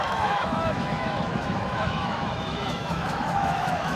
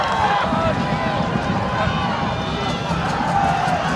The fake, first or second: first